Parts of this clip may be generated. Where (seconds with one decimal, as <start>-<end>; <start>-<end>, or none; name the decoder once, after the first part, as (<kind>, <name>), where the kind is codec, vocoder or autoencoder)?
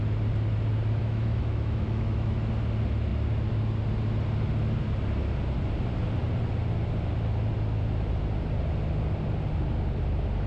1.0-2.5 (autoencoder, DAC-VAE)